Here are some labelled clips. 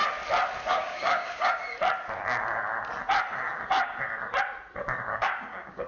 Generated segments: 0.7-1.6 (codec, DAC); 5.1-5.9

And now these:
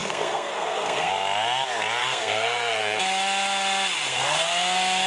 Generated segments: 0.0-1.1 (codec, SNAC); 2.0-3.0; 4.1-5.1

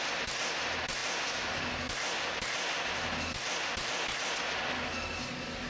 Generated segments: none

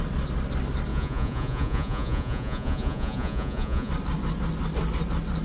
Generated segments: 0.9-3.9 (vocoder, Vocos)

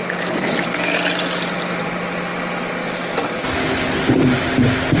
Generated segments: none